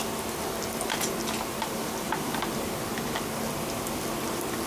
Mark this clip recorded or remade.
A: recorded